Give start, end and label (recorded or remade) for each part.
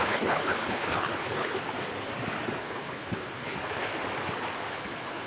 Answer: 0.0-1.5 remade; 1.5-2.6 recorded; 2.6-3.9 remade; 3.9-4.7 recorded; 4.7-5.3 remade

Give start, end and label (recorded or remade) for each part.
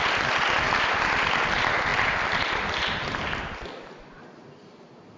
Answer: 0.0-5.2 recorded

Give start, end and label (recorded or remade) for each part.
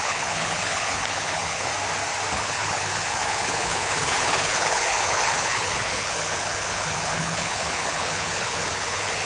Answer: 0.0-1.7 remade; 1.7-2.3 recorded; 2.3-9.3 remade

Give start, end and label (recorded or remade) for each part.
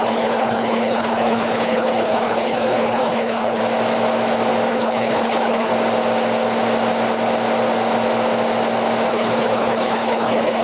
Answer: 0.0-3.6 remade; 3.6-4.7 recorded; 4.7-5.7 remade; 5.7-9.1 recorded; 9.1-10.6 remade